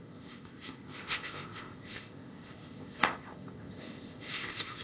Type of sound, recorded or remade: remade